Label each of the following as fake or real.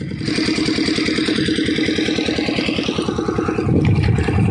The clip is real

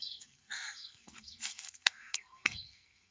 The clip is fake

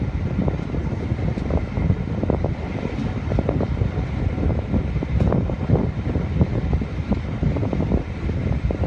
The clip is real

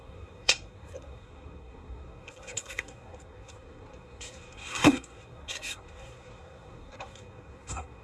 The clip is fake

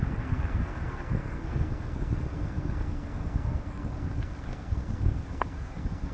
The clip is fake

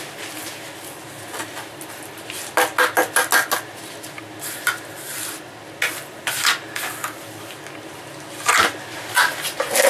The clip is real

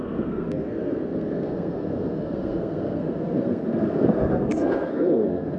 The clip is fake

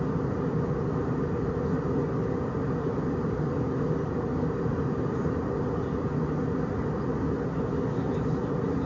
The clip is real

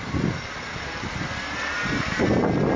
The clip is real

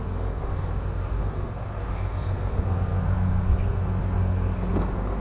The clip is fake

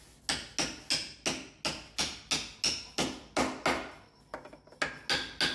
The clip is real